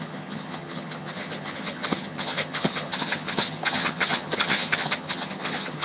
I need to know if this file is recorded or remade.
remade